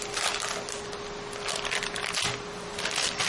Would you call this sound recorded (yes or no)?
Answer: yes